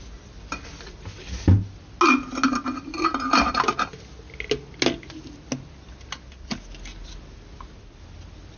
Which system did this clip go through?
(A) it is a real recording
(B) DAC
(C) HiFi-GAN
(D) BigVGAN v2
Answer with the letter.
A